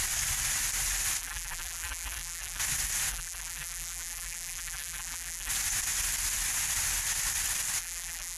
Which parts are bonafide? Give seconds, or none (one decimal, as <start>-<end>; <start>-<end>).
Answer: 0.0-1.2; 2.6-3.1; 5.5-7.8